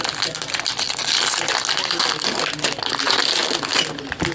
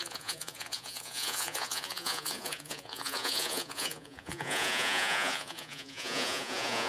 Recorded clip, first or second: first